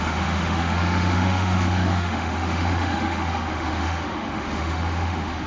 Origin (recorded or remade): remade